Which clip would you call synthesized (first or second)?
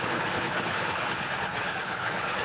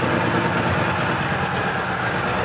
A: first